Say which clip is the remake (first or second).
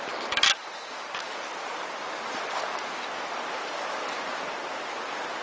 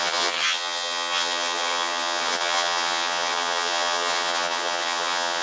second